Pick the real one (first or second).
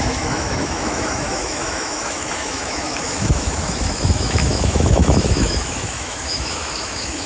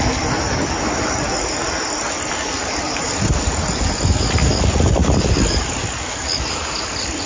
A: second